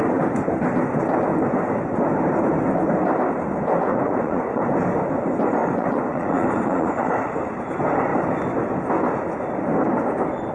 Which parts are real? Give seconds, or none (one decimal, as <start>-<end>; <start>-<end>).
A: 0.0-3.9; 4.6-5.6; 7.1-10.5